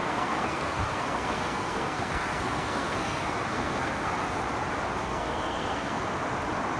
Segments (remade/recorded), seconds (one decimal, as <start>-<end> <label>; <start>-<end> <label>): 0.0-4.1 remade; 4.1-5.0 recorded; 5.0-6.0 remade; 6.0-6.8 recorded

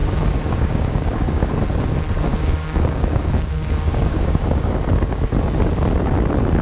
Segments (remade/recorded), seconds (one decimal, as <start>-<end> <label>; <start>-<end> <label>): 0.0-1.5 remade; 1.5-2.3 recorded; 2.3-4.8 remade; 4.8-6.6 recorded

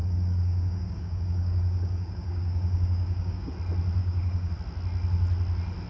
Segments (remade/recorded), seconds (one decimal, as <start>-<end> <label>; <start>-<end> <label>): 0.0-3.5 remade; 3.5-4.0 recorded; 4.0-4.5 remade; 4.5-5.9 recorded

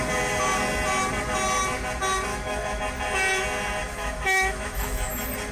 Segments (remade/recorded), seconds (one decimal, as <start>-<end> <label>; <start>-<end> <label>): 0.0-2.3 recorded; 2.3-2.8 remade; 2.8-3.8 recorded; 3.8-5.1 remade; 5.1-5.5 recorded

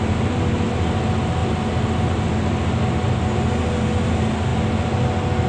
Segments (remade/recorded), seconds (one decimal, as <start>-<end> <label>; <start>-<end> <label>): 0.0-5.5 recorded

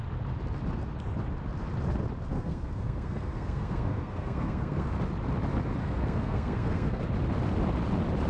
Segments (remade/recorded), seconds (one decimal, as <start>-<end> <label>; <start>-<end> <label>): 0.0-2.3 recorded; 2.3-4.9 remade; 4.9-5.8 recorded; 5.8-7.0 remade; 7.0-8.3 recorded

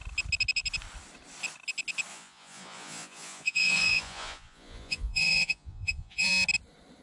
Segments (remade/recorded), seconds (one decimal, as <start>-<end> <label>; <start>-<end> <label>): 0.0-2.1 recorded; 2.1-6.3 remade; 6.3-7.0 recorded